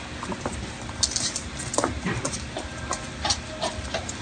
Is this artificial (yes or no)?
no